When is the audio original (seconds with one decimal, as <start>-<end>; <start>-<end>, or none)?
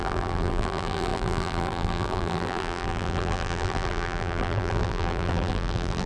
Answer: none